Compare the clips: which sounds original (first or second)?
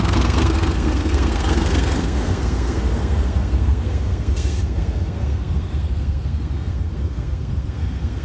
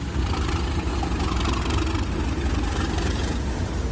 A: second